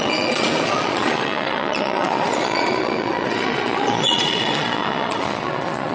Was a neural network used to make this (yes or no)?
yes